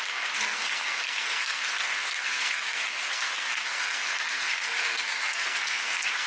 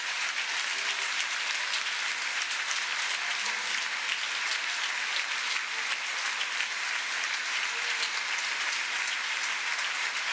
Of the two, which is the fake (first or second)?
first